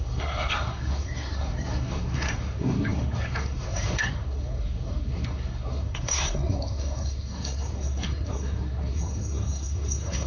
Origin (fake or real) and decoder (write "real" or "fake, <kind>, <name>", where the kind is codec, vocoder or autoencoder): fake, codec, SNAC